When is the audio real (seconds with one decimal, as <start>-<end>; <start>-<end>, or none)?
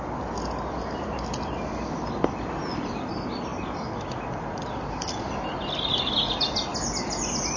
0.0-7.6